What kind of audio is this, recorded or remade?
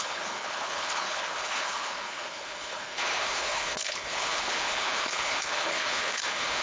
remade